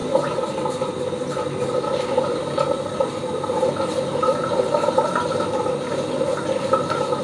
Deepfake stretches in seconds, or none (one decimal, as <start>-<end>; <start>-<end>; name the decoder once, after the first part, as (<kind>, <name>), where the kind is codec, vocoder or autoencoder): none